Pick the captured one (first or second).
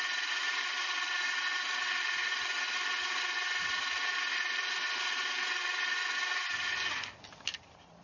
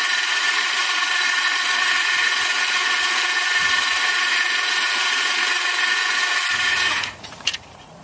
first